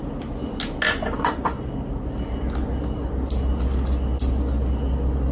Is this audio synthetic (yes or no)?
no